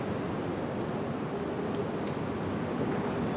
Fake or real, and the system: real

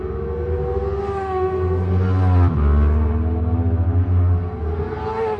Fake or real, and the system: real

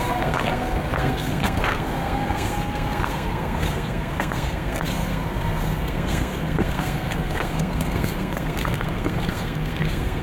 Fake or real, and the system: fake, codec, SNAC